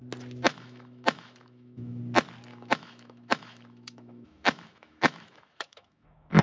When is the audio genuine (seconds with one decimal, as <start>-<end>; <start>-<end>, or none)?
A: 0.0-0.5; 2.0-2.5